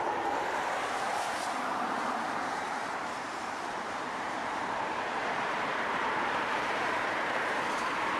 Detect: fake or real fake